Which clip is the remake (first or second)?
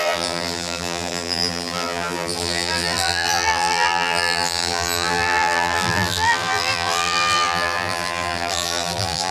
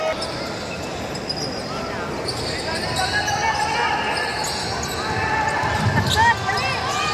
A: first